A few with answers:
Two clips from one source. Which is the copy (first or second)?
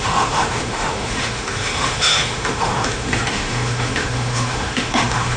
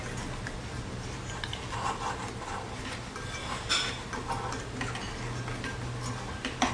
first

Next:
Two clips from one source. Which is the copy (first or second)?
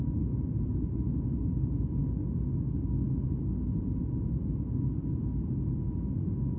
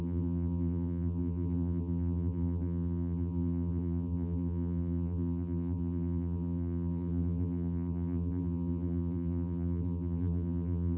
second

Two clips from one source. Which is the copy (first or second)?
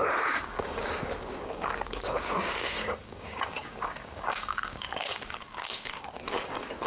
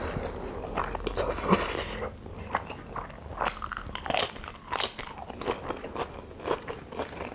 first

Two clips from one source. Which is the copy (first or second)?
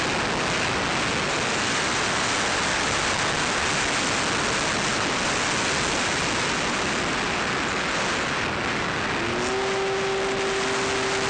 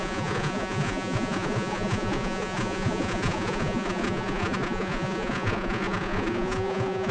second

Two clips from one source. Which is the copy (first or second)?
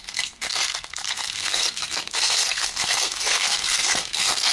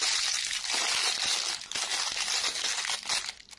first